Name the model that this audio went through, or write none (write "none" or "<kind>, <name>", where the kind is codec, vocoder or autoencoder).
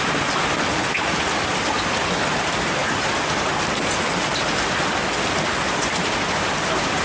none